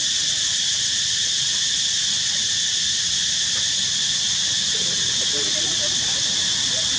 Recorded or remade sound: recorded